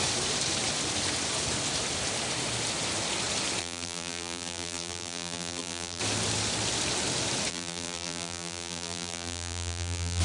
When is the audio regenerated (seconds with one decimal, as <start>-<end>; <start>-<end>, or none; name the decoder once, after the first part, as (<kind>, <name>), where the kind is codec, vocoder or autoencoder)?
3.6-6.0 (vocoder, BigVGAN v2); 7.5-10.2